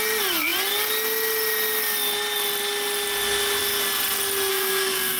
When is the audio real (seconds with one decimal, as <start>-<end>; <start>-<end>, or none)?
0.0-4.5